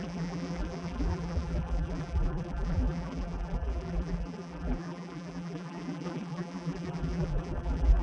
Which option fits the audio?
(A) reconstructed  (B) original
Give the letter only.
A